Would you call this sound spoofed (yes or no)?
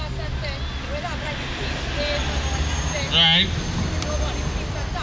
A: no